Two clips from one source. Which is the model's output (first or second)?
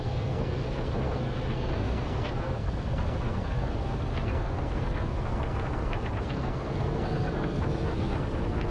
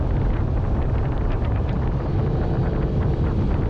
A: first